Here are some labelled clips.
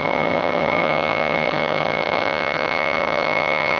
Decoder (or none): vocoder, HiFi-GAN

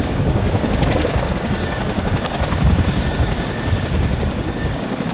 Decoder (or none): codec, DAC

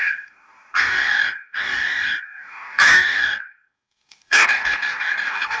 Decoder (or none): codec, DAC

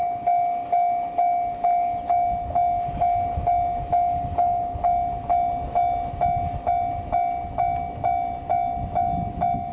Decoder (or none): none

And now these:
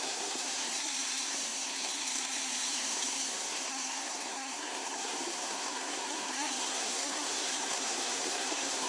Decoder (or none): codec, SNAC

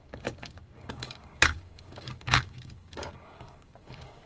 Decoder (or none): codec, DAC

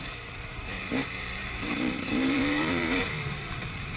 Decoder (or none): vocoder, BigVGAN v2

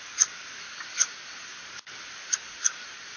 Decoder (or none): codec, DAC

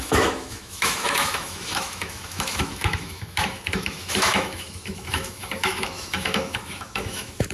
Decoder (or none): autoencoder, DAC-VAE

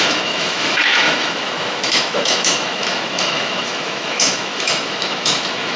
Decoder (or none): autoencoder, DAC-VAE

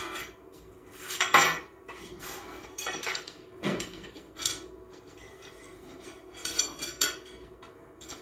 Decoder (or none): codec, SNAC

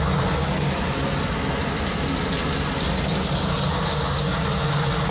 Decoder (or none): none